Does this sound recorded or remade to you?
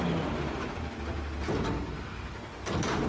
recorded